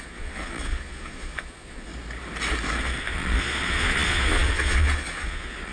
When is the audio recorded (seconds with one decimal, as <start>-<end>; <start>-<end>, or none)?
1.9-3.0